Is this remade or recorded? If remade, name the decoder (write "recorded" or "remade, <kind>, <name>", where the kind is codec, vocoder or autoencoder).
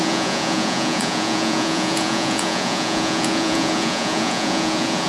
remade, vocoder, Vocos